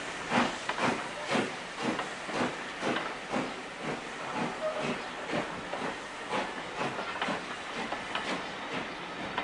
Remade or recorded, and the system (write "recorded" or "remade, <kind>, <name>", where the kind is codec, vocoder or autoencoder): recorded